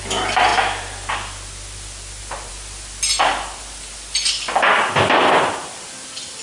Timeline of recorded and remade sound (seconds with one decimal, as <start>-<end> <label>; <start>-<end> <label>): 0.0-6.4 recorded